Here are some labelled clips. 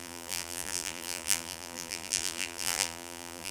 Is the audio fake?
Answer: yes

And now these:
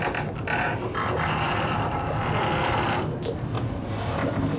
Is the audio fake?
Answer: no